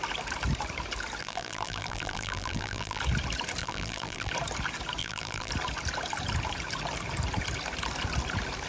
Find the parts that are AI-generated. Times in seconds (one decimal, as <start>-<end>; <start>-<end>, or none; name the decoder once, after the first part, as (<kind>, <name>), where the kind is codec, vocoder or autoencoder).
1.2-3.0 (vocoder, BigVGAN v2); 3.6-4.3; 5.0-5.5